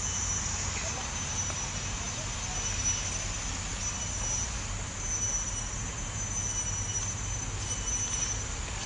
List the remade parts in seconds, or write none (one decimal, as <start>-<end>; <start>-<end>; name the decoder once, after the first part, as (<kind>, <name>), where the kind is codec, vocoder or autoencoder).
none